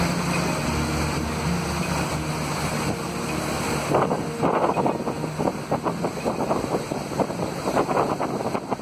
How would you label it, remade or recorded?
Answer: recorded